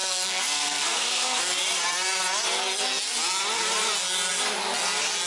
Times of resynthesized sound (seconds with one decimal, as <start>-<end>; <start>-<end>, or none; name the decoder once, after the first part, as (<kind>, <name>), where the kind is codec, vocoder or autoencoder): 0.0-1.4 (codec, SNAC)